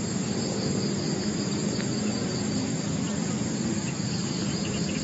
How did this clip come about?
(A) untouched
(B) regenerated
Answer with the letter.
B